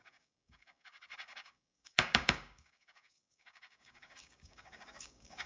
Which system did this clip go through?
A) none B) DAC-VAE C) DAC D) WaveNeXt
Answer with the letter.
C